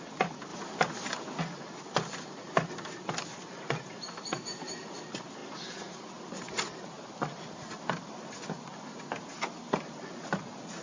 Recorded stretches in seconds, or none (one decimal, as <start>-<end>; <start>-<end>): 0.0-10.8